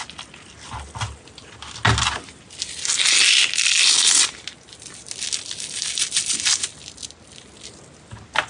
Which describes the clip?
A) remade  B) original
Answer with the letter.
B